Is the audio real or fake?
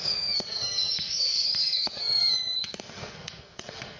fake